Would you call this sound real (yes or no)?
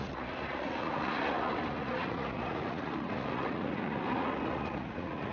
no